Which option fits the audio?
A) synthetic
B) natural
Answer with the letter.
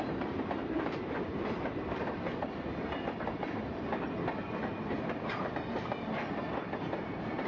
A